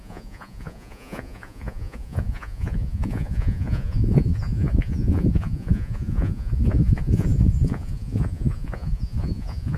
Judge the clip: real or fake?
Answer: fake